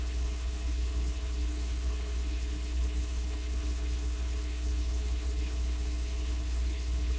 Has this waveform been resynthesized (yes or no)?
yes